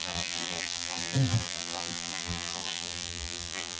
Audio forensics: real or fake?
fake